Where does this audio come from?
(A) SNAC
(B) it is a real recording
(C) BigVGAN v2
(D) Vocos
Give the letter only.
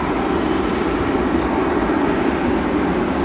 B